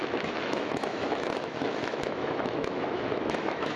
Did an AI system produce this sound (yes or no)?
yes